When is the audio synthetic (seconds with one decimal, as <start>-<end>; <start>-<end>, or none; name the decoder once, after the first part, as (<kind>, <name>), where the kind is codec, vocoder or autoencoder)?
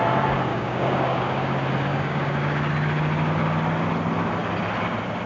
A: 0.5-1.5 (codec, DAC); 1.9-2.7